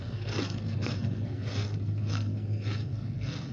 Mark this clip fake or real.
fake